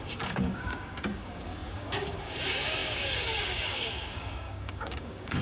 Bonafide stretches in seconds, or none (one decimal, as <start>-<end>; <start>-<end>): none

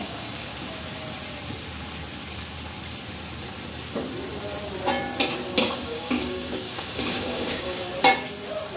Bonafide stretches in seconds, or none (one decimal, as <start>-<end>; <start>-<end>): 0.5-5.7; 7.9-8.8

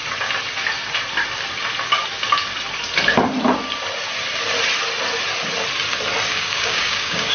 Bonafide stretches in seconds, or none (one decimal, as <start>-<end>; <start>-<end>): 0.0-6.3

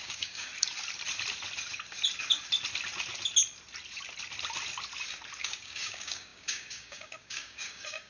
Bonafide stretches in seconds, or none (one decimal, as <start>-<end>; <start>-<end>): 0.5-5.4

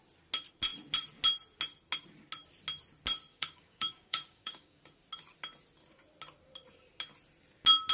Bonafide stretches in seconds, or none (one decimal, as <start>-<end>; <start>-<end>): 0.0-3.3; 4.8-7.9

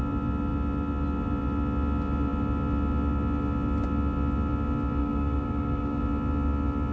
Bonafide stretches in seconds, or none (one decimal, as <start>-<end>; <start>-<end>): 0.0-5.0; 6.0-6.9

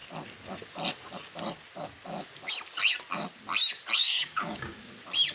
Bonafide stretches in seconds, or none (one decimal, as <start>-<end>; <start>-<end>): 0.0-4.0; 4.8-5.3

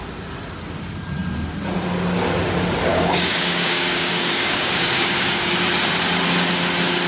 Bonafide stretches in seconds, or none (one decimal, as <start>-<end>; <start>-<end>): 0.0-2.9; 5.5-7.1